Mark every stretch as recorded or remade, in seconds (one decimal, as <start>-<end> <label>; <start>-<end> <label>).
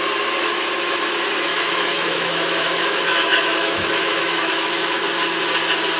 0.0-1.5 recorded; 1.5-5.1 remade; 5.1-6.0 recorded